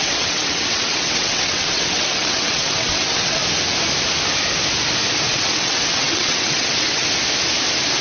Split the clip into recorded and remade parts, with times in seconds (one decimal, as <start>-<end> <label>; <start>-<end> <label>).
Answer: 0.0-3.4 remade; 3.4-5.3 recorded; 5.3-7.0 remade; 7.0-8.0 recorded